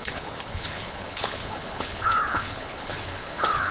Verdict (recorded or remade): remade